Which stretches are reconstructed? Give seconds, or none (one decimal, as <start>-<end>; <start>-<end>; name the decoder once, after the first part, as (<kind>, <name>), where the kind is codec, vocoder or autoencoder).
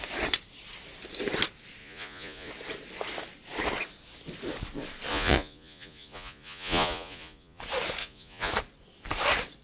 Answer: 1.8-2.5 (vocoder, Vocos); 5.1-7.6; 8.0-8.5